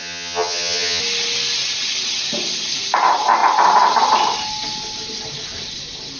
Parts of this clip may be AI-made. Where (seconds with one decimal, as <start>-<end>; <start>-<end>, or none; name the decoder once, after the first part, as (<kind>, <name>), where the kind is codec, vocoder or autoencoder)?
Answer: 0.0-1.0 (vocoder, HiFi-GAN)